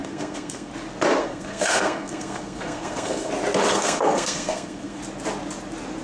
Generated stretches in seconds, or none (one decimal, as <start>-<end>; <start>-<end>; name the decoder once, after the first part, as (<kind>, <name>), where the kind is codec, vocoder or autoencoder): 0.0-0.7 (codec, SNAC); 1.2-3.3; 3.7-5.0